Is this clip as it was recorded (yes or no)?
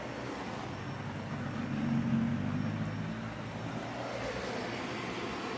yes